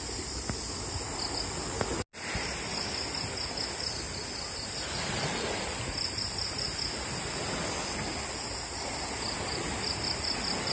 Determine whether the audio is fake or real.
real